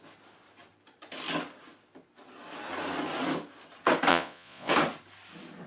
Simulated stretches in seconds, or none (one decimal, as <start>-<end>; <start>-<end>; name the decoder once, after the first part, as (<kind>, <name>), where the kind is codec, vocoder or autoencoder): 4.1-4.7 (vocoder, Vocos)